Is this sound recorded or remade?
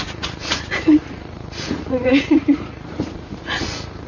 remade